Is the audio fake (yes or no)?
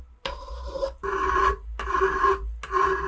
no